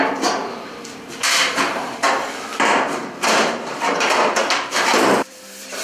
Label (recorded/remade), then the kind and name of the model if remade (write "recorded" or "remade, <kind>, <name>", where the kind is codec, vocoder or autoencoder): remade, vocoder, BigVGAN v2